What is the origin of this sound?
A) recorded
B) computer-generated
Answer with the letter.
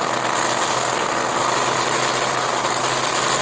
A